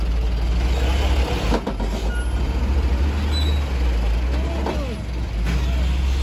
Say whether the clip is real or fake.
real